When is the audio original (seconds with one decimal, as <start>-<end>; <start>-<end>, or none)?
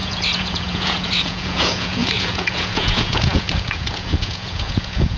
none